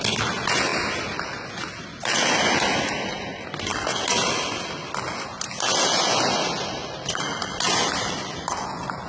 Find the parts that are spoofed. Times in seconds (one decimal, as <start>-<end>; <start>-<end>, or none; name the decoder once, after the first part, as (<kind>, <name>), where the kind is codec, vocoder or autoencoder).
none